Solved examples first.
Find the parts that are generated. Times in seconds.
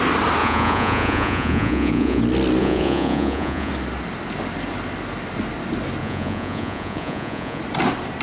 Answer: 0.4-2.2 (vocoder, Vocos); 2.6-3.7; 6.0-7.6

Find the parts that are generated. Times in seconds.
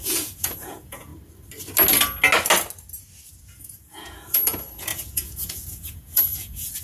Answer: 0.0-1.1 (vocoder, Vocos); 3.3-6.8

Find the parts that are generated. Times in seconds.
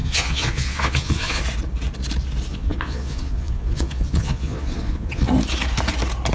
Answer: 0.0-1.4 (vocoder, Vocos); 2.5-5.3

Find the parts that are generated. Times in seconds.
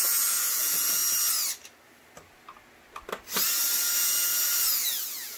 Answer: 0.0-1.0 (vocoder, Vocos); 4.0-5.4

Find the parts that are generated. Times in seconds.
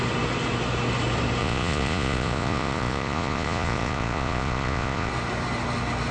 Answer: 1.4-5.1 (vocoder, Vocos)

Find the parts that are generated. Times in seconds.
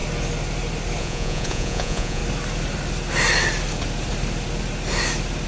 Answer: 1.0-2.2 (vocoder, Vocos)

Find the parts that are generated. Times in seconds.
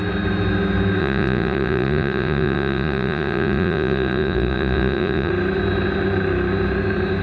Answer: 1.0-5.3 (vocoder, Vocos)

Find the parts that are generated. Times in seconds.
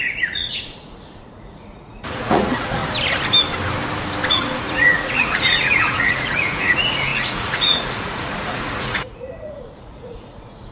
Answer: 0.0-2.8 (vocoder, Vocos); 4.3-10.7